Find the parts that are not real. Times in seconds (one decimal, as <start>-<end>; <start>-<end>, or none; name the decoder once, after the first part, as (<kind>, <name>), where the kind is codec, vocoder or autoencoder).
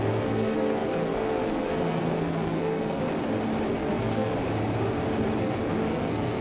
0.0-3.0 (codec, SNAC); 3.8-4.3; 5.4-6.4